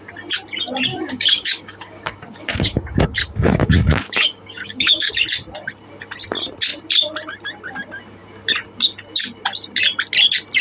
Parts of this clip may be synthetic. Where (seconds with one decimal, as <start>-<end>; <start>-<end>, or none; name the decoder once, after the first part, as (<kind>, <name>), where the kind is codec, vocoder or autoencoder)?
0.9-5.1 (codec, DAC)